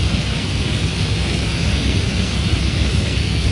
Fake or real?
fake